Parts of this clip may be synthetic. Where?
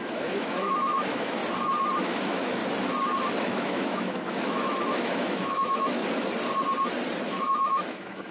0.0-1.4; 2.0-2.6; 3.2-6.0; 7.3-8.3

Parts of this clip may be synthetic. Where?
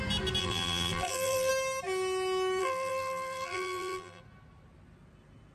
0.4-1.5; 2.6-4.2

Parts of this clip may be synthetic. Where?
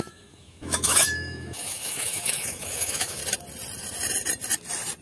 0.0-3.2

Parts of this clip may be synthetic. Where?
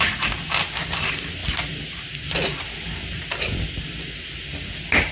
none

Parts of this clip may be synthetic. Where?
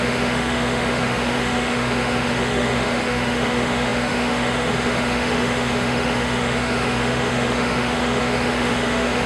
0.0-9.3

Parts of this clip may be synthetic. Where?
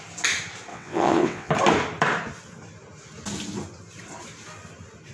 0.7-1.5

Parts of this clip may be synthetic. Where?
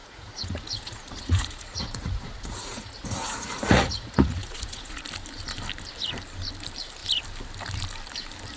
0.0-5.0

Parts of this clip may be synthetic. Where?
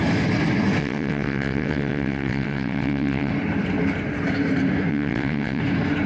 0.8-3.3; 4.9-5.6